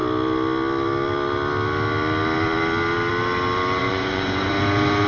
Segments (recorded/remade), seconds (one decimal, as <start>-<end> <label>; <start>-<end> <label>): 0.0-3.8 recorded; 3.8-4.5 remade; 4.5-5.1 recorded